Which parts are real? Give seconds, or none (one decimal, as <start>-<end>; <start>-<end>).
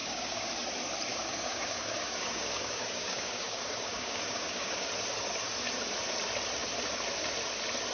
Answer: 0.5-1.1; 4.9-7.9